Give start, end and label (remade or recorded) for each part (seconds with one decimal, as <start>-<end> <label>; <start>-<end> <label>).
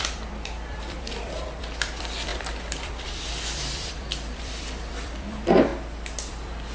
0.0-5.7 remade; 5.7-6.3 recorded; 6.3-6.7 remade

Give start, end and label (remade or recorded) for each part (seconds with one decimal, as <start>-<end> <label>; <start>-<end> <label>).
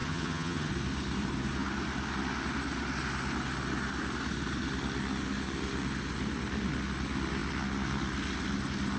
0.0-0.7 remade; 0.7-9.0 recorded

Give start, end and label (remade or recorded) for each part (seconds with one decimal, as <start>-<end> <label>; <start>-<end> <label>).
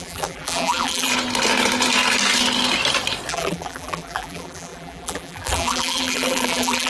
0.0-1.1 remade; 1.1-3.3 recorded; 3.3-6.9 remade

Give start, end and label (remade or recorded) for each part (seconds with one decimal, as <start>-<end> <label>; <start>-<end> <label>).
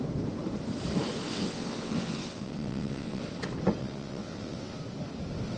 0.0-1.3 recorded; 1.3-3.2 remade; 3.2-3.8 recorded; 3.8-4.7 remade; 4.7-5.6 recorded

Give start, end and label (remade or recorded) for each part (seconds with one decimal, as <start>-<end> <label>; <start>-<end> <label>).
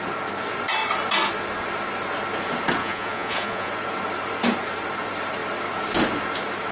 0.0-2.8 recorded; 2.8-3.7 remade; 3.7-6.7 recorded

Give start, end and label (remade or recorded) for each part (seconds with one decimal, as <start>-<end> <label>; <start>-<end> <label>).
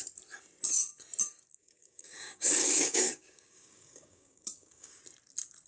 0.0-1.6 recorded; 1.6-5.0 remade; 5.0-5.7 recorded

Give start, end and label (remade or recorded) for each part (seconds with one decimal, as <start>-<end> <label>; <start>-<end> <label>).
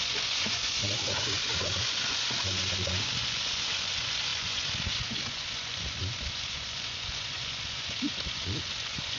0.0-9.2 remade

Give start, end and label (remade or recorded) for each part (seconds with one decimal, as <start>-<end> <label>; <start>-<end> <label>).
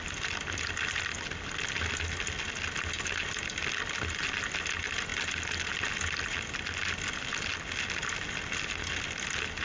0.0-9.6 recorded